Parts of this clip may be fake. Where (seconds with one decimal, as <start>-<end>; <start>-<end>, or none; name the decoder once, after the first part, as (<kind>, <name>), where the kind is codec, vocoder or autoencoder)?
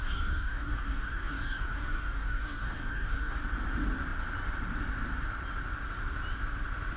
0.0-3.4 (codec, DAC)